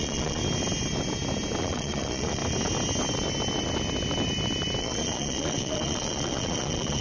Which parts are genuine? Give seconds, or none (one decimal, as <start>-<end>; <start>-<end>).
0.4-1.6; 2.4-4.8